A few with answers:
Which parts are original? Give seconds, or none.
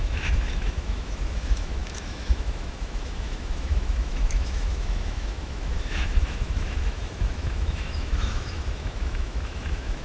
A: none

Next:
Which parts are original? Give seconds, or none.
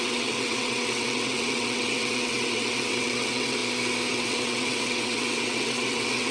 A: 3.6-4.1